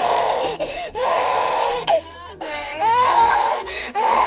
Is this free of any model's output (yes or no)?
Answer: no